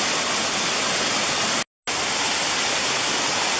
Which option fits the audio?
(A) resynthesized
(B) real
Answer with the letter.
B